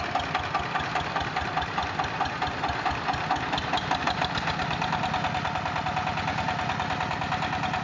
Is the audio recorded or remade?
recorded